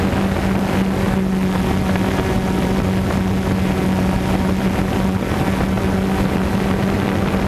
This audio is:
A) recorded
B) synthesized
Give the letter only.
A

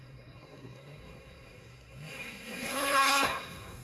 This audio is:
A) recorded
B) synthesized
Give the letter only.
B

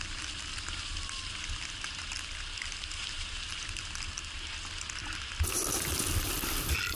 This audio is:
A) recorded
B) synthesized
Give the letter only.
A